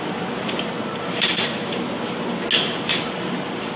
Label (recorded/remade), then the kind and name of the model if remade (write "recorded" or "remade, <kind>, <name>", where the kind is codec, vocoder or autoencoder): recorded